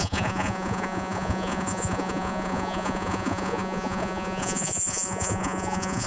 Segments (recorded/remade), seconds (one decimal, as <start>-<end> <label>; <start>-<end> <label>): 0.0-6.1 remade